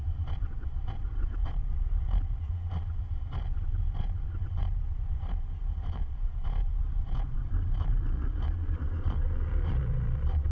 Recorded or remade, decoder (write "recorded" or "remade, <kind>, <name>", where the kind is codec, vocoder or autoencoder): remade, vocoder, Vocos